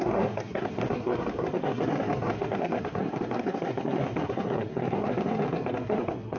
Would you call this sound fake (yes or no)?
yes